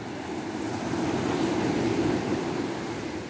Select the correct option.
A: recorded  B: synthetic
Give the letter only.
A